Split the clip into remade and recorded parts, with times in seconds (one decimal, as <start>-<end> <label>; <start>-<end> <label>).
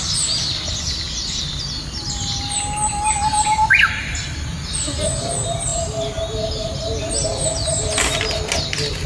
0.0-9.1 recorded